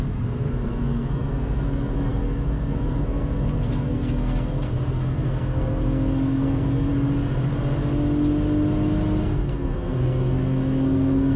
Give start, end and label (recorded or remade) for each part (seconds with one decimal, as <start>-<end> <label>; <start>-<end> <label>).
0.0-6.9 remade; 6.9-9.2 recorded; 9.2-11.4 remade